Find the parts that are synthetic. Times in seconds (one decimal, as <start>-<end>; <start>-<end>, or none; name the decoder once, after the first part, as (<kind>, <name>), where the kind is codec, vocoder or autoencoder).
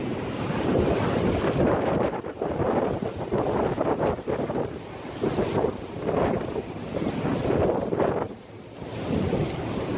none